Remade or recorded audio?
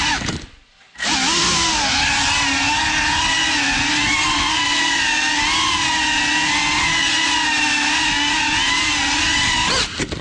recorded